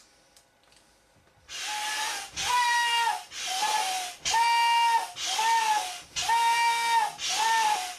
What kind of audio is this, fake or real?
real